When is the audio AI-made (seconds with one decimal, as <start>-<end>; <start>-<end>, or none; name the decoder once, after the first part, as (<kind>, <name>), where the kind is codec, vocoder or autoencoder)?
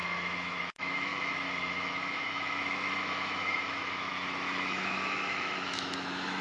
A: 0.0-6.4 (autoencoder, DAC-VAE)